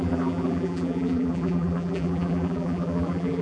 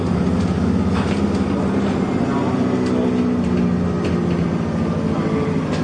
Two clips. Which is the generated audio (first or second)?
first